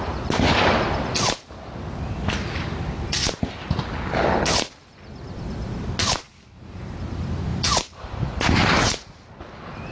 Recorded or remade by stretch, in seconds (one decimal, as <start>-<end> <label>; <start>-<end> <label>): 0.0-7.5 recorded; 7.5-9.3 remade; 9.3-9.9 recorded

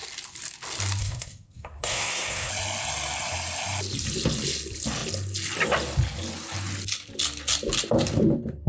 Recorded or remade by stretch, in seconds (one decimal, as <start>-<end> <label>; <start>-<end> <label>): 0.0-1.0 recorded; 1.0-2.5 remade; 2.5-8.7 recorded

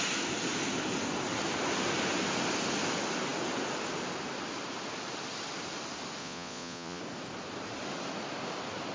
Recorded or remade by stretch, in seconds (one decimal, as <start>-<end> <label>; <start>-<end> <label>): 0.0-6.2 recorded; 6.2-7.0 remade; 7.0-8.9 recorded

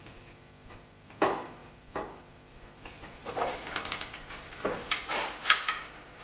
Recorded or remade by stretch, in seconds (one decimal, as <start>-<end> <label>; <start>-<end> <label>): 0.0-5.0 remade; 5.0-6.2 recorded

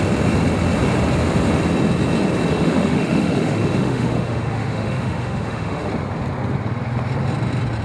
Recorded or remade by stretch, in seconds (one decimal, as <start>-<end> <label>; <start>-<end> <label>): 0.0-2.5 recorded; 2.5-5.9 remade; 5.9-7.8 recorded

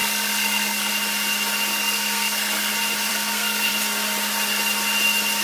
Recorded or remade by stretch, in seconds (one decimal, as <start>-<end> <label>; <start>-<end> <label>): 0.0-0.9 remade; 0.9-1.7 recorded; 1.7-2.7 remade; 2.7-3.1 recorded; 3.1-3.7 remade; 3.7-5.4 recorded

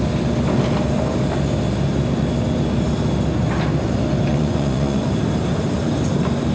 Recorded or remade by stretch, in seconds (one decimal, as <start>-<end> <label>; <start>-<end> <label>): 0.0-4.3 recorded; 4.3-5.1 remade; 5.1-6.5 recorded

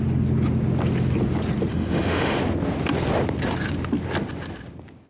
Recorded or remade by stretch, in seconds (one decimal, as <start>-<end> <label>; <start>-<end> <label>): 0.0-1.7 recorded; 1.7-2.4 remade; 2.4-5.1 recorded